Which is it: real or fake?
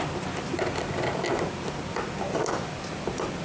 real